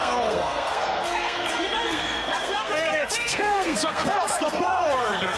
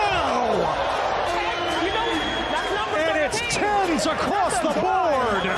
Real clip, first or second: second